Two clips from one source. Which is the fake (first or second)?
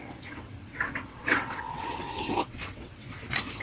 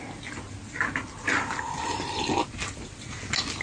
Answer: first